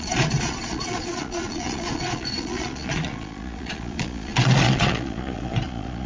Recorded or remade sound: remade